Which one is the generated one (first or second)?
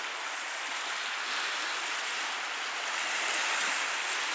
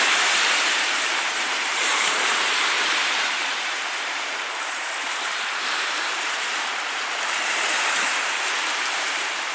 second